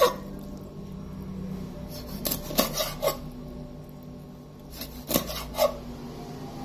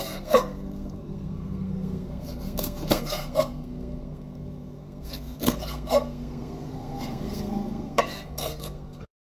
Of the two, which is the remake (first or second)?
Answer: second